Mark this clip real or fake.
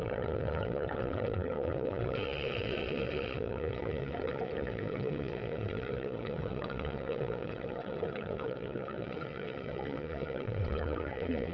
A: fake